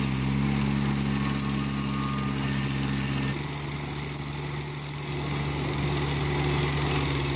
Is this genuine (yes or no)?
yes